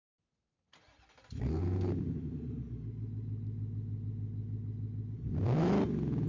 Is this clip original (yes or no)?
no